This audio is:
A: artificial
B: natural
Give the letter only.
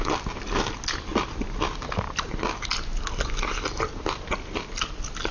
B